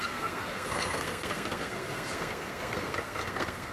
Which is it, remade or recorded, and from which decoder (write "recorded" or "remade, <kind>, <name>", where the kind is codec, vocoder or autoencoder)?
remade, codec, SNAC